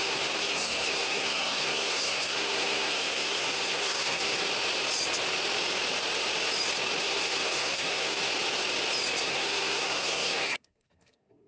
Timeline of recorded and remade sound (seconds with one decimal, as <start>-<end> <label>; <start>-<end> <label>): 0.0-4.4 remade; 4.4-7.0 recorded; 7.0-8.2 remade; 8.2-9.2 recorded; 9.2-11.5 remade